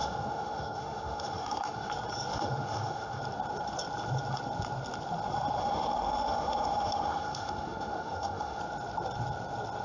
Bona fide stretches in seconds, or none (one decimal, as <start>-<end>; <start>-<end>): 1.9-2.3; 3.2-5.6; 8.6-9.8